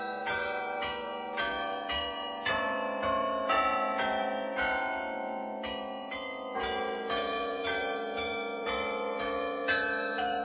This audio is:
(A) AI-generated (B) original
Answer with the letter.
A